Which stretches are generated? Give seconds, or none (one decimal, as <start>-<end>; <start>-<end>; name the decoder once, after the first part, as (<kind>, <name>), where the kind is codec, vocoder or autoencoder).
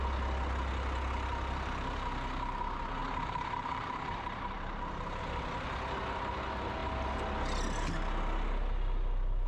3.0-5.2 (vocoder, BigVGAN v2)